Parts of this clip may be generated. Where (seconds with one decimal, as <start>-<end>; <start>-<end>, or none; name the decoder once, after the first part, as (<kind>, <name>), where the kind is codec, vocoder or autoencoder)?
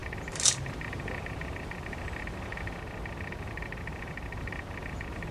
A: none